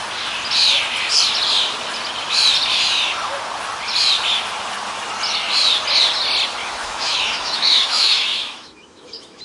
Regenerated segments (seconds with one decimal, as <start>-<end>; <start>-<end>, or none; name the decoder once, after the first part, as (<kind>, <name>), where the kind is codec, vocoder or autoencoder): 6.6-9.4 (autoencoder, DAC-VAE)